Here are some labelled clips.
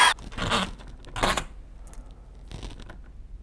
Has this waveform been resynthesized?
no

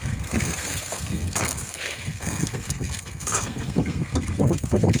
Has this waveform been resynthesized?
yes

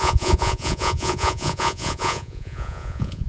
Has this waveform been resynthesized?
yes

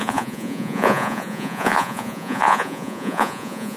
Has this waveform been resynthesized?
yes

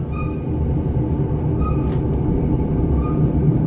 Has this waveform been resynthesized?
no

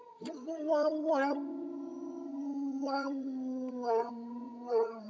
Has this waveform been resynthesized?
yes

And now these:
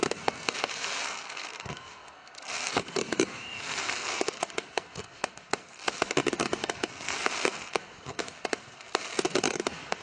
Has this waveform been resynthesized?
yes